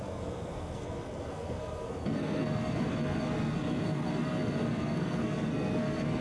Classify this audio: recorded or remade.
remade